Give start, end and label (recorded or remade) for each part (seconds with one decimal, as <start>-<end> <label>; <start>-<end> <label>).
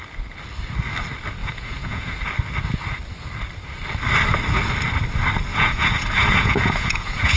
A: 0.0-1.4 recorded; 1.4-2.1 remade; 2.1-5.5 recorded; 5.5-7.4 remade